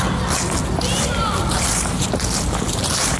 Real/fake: real